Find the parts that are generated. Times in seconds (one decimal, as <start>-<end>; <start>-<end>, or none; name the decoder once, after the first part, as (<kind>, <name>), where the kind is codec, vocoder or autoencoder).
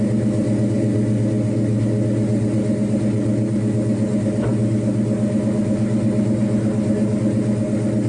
none